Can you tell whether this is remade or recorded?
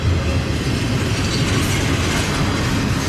recorded